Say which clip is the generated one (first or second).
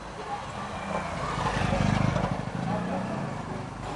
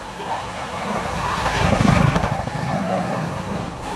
second